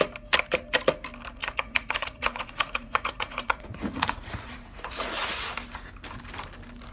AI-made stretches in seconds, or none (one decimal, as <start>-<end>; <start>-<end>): 1.4-5.5

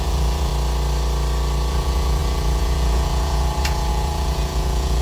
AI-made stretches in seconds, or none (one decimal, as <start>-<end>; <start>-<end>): 0.0-0.5; 1.7-5.0

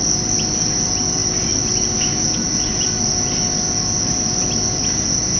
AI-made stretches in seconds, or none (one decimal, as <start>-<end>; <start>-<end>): none

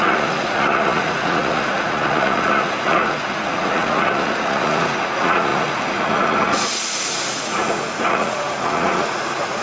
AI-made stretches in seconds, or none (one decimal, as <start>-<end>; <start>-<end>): 0.0-9.6

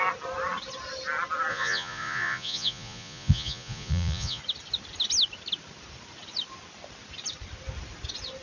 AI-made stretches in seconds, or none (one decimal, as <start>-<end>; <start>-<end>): 1.5-4.4

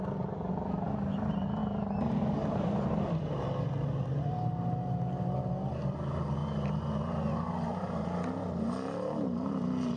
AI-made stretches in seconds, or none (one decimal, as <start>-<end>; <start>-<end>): none

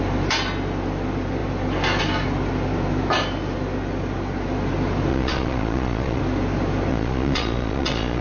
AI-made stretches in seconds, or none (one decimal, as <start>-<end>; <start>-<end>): 5.1-6.2; 6.9-8.2

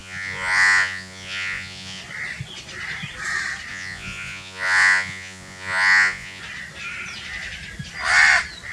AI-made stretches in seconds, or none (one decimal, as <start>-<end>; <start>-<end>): 0.0-2.0; 3.7-6.4